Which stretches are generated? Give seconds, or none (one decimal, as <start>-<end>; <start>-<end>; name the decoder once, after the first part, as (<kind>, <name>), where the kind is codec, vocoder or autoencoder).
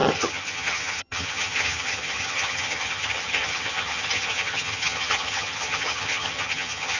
0.0-7.0 (vocoder, HiFi-GAN)